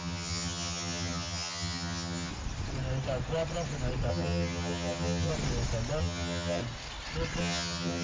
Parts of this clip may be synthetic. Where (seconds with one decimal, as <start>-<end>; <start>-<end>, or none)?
0.0-2.3; 4.1-5.3; 6.0-6.6; 7.4-8.0